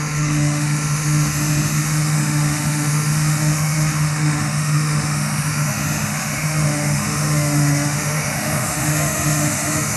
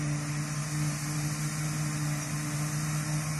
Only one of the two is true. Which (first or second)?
second